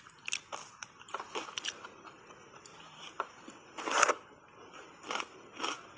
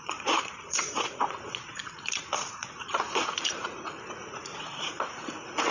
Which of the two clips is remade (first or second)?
second